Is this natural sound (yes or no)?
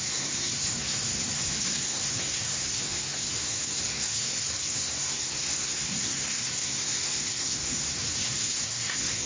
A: no